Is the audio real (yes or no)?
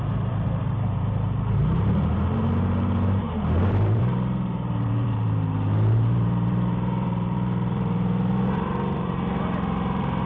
no